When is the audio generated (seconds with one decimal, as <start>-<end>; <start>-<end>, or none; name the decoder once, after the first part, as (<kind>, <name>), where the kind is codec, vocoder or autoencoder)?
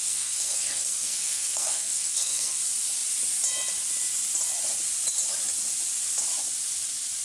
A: 0.0-2.6 (codec, SNAC)